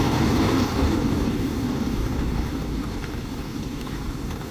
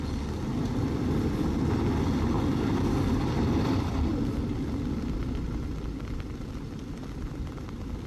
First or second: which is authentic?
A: second